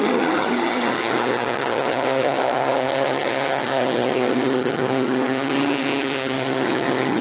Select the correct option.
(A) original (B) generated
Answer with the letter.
B